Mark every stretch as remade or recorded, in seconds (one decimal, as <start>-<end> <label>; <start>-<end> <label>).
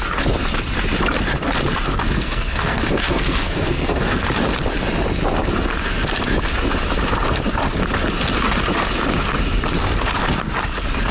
0.0-2.0 recorded; 2.0-4.2 remade; 4.2-11.1 recorded